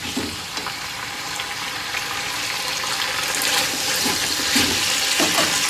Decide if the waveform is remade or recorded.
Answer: recorded